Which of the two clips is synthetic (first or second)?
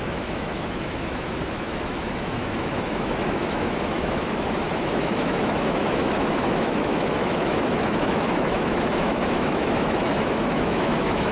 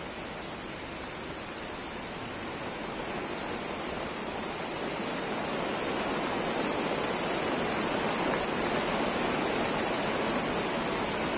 first